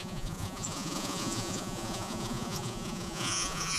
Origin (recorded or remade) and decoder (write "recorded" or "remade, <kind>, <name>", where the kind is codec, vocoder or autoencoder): remade, vocoder, Vocos